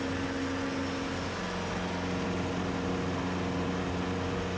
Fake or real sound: real